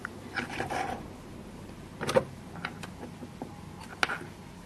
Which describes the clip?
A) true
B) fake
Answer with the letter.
A